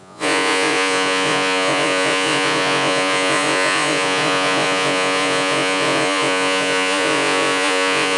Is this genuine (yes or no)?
no